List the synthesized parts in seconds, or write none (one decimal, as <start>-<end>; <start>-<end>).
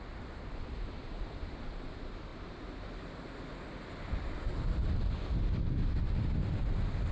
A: none